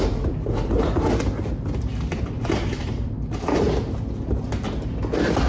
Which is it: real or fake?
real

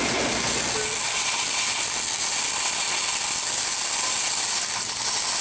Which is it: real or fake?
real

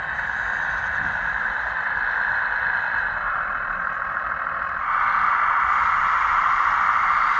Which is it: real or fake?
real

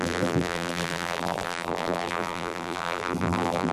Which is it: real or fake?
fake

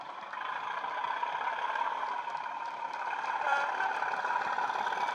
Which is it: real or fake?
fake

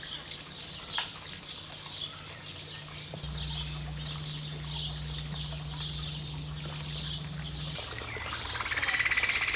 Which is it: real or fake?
real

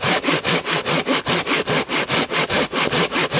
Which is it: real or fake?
real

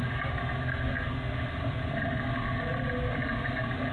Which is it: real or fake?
real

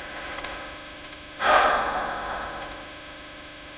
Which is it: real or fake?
fake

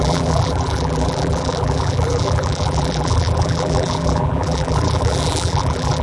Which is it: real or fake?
fake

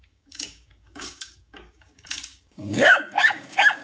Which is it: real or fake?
fake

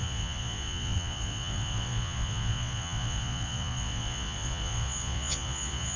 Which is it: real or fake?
fake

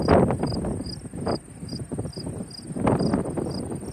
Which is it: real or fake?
real